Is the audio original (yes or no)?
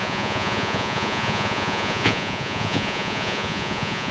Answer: no